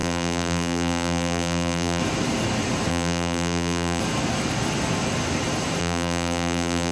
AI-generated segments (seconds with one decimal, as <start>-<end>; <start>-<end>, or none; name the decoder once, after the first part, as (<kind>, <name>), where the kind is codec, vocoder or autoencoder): 0.0-2.0 (vocoder, BigVGAN v2); 2.9-4.0; 5.8-6.9